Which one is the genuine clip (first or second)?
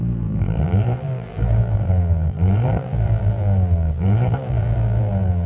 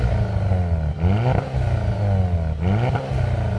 second